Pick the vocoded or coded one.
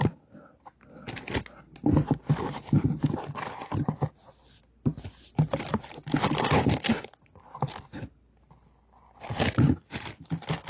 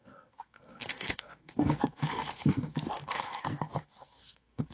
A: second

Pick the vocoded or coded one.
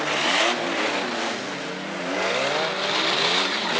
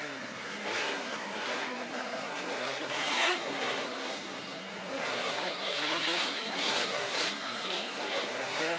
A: second